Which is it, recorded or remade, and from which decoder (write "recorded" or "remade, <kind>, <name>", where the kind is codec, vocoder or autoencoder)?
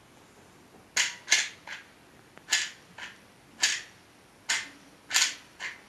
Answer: recorded